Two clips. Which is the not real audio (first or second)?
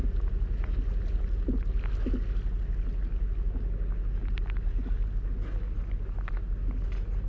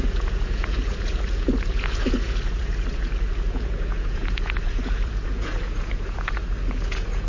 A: second